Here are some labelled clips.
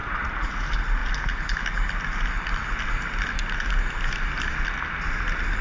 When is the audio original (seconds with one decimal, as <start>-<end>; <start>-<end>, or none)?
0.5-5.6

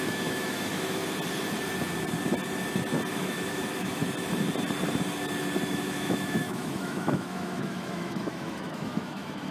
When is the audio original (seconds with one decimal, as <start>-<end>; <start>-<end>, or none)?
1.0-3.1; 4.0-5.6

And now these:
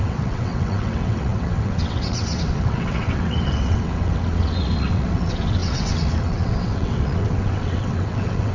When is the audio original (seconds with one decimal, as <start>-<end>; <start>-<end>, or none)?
none

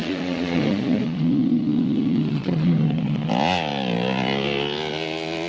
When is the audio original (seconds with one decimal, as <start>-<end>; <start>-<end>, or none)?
3.3-5.5